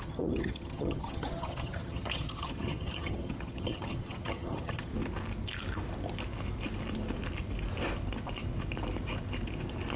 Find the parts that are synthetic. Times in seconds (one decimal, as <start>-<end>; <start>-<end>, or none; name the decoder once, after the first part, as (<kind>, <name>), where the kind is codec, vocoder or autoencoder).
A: 0.0-4.9 (vocoder, HiFi-GAN)